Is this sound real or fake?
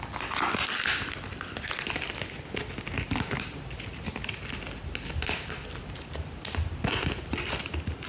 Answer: real